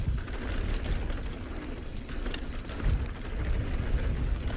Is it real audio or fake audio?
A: real